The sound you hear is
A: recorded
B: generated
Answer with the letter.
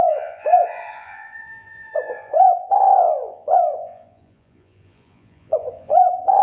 B